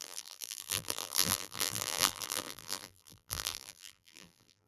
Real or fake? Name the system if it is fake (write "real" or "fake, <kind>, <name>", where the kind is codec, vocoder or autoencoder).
fake, vocoder, BigVGAN v2